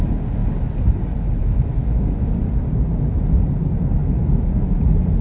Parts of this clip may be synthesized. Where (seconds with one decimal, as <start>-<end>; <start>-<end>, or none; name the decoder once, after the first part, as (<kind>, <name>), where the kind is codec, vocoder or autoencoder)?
1.4-2.4 (autoencoder, DAC-VAE)